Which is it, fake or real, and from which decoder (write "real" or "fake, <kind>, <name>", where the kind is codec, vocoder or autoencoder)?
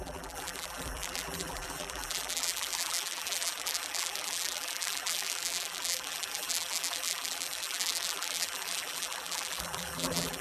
fake, vocoder, BigVGAN v2